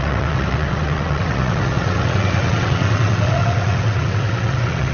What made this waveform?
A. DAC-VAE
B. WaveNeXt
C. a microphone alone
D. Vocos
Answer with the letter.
B